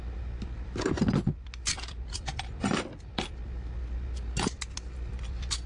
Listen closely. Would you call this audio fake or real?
real